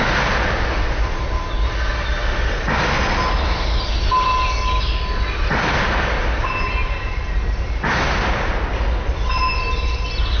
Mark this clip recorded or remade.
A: recorded